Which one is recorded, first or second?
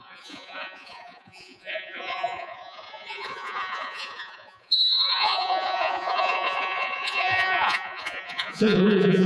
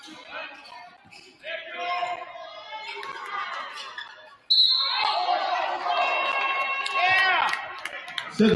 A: second